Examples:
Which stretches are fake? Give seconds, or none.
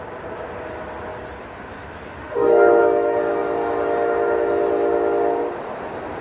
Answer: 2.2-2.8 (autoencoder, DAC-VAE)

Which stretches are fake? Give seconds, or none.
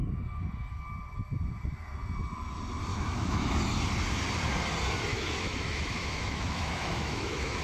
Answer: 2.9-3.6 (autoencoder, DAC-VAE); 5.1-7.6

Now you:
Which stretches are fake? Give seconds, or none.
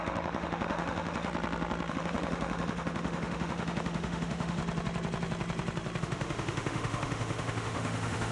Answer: 0.0-1.3 (autoencoder, DAC-VAE); 1.9-4.6; 6.0-8.3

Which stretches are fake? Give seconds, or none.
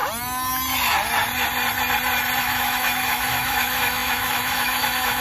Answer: 2.4-5.2 (autoencoder, DAC-VAE)